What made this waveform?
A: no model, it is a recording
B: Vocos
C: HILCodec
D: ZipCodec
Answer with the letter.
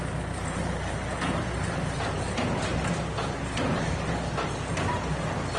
A